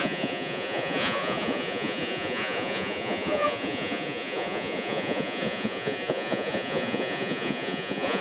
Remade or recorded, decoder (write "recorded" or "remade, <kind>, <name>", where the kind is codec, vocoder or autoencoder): remade, vocoder, Vocos